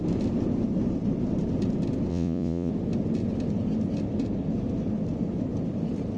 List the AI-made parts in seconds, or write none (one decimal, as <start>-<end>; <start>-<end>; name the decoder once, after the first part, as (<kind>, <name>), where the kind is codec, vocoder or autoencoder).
2.1-2.7 (vocoder, Vocos)